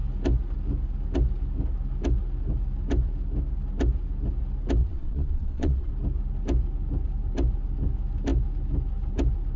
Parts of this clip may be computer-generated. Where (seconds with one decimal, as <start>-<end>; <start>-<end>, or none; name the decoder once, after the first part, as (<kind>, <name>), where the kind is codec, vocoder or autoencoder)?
4.8-5.9 (vocoder, Vocos)